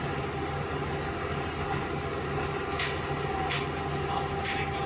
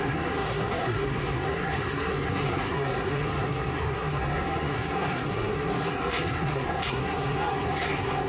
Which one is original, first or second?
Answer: first